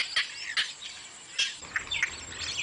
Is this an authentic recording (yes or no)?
yes